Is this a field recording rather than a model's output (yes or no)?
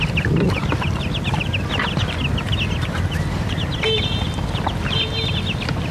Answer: yes